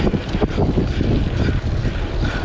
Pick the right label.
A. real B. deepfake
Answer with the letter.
A